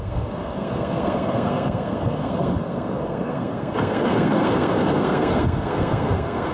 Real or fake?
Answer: fake